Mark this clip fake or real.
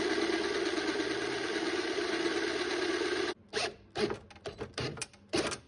real